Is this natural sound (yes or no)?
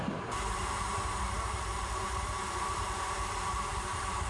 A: no